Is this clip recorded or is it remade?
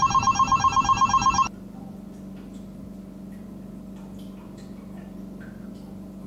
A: recorded